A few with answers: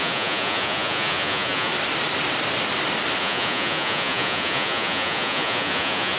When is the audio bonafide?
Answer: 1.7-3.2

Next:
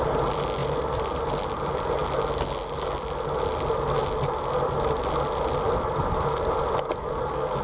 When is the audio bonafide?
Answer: 0.0-7.0

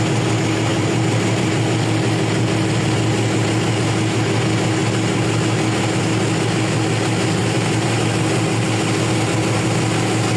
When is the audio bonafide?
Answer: 0.0-0.7; 1.5-7.4; 8.0-10.4

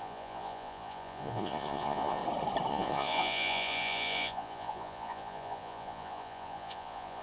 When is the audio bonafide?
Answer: 2.2-2.7

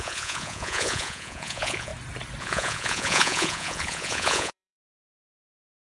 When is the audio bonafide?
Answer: 1.9-2.4

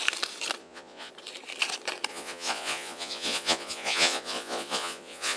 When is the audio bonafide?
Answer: 0.0-0.6; 1.1-2.1

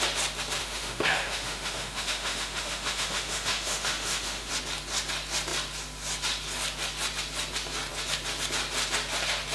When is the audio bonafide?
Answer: 0.0-0.6; 4.5-9.5